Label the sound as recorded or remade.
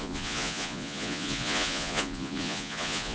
remade